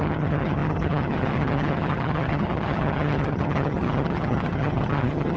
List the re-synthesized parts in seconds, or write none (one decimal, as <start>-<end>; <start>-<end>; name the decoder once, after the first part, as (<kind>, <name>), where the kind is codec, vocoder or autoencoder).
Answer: 0.0-5.4 (vocoder, HiFi-GAN)